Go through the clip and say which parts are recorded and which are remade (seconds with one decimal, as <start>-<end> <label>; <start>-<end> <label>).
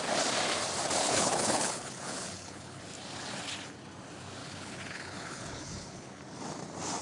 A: 0.0-1.0 recorded; 1.0-2.8 remade; 2.8-4.4 recorded; 4.4-6.2 remade; 6.2-7.0 recorded